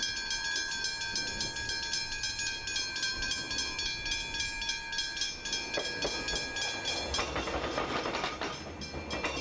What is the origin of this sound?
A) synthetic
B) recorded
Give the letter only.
B